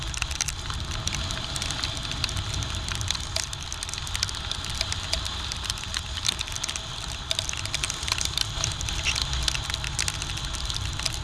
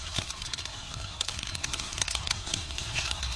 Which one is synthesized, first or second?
second